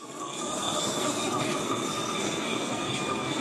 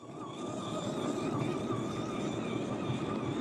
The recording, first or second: second